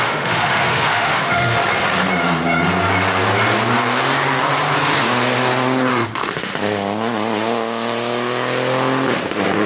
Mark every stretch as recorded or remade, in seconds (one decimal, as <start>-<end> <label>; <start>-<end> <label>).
0.0-1.6 remade; 1.6-5.9 recorded; 5.9-6.5 remade; 6.5-9.7 recorded